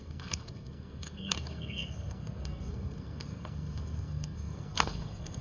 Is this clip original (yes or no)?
no